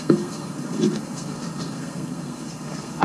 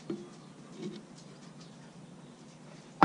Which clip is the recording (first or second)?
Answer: second